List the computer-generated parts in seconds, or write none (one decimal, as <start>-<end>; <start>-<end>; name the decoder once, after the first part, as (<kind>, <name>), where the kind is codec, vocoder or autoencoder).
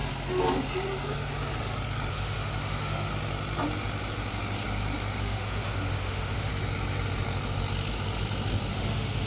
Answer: 2.1-3.1 (autoencoder, DAC-VAE); 5.2-6.5; 8.7-9.3